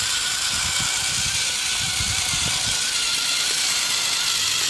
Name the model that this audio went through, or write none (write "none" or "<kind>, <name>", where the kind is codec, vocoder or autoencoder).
none